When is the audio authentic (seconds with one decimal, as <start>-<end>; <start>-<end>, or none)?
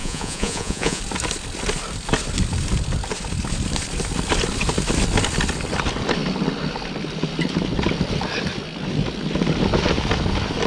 1.0-10.7